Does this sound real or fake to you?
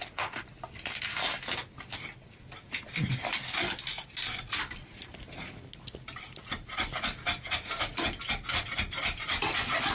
real